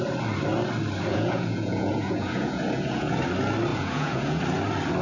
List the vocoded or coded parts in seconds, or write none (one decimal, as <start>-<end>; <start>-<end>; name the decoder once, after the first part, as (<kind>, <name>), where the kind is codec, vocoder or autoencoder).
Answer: 1.1-3.2 (vocoder, Vocos); 3.7-4.4